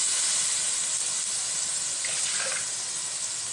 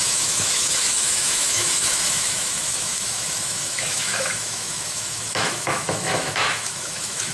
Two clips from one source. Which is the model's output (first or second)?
second